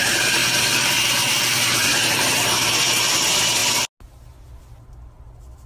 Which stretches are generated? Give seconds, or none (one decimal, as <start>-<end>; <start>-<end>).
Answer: none